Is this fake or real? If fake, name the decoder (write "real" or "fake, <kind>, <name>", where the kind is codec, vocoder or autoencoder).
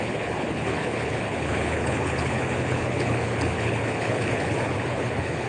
fake, codec, HILCodec